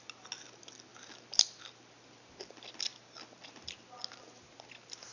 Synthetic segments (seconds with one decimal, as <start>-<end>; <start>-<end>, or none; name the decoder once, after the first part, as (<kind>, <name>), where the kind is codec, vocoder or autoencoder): none